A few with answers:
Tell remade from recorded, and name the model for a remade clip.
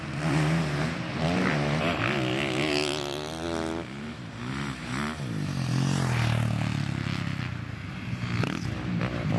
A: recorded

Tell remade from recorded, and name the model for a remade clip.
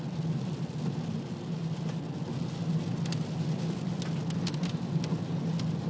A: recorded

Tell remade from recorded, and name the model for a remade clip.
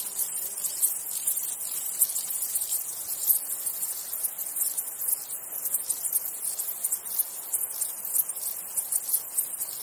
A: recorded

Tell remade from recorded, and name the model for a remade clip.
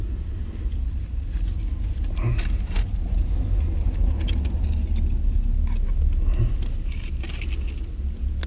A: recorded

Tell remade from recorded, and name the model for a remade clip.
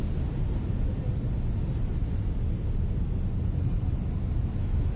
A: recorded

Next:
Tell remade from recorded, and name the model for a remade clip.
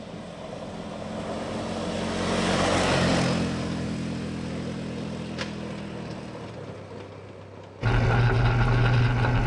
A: recorded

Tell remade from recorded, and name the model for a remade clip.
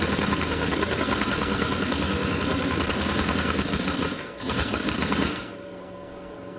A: remade, codec, SNAC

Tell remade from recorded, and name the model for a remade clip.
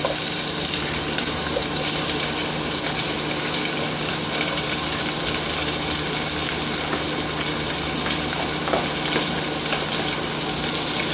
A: recorded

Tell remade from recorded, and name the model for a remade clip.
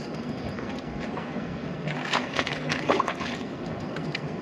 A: remade, codec, SNAC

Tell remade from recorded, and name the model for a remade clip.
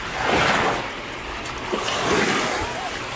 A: recorded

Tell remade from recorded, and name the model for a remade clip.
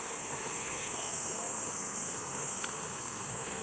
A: remade, codec, SNAC